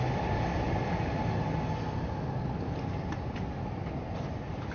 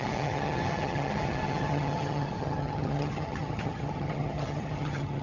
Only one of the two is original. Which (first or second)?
first